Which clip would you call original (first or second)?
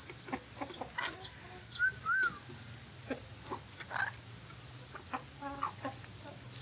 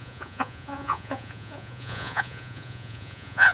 first